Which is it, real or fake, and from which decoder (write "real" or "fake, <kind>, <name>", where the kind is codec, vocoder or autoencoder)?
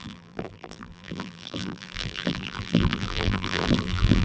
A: fake, vocoder, BigVGAN v2